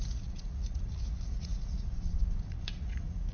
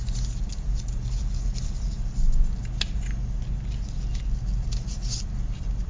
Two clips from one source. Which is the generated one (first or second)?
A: first